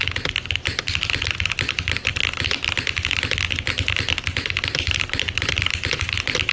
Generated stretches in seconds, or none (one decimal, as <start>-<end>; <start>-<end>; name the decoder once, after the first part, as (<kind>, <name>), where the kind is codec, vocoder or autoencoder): none